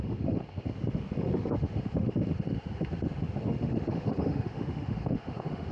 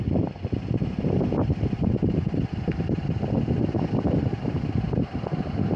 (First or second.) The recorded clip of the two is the second